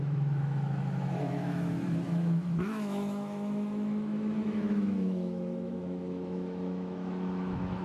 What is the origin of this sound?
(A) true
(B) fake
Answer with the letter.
B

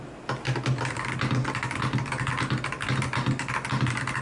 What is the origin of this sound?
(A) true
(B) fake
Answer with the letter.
A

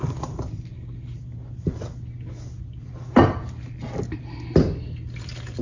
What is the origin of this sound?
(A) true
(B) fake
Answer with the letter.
A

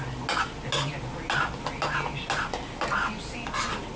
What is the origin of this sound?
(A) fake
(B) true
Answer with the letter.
B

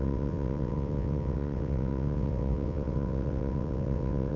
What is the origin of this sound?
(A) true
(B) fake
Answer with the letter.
B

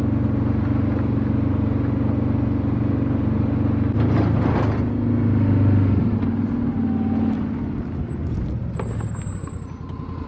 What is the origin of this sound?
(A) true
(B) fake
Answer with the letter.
A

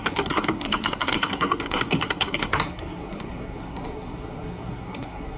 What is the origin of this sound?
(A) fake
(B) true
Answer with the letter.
A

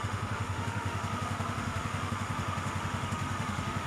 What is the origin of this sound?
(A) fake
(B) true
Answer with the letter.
A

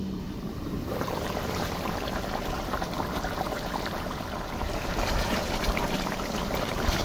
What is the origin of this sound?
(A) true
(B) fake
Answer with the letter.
B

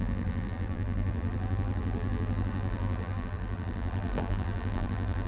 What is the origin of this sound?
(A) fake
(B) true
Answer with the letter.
A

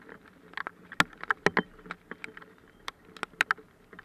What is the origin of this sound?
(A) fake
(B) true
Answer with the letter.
B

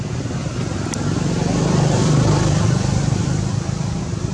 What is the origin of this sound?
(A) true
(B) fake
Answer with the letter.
B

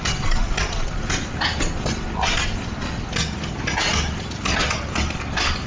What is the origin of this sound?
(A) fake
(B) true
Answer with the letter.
B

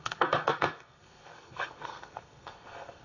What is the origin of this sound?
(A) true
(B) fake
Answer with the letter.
B